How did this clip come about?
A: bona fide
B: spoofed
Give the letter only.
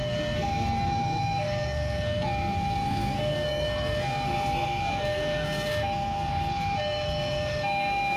B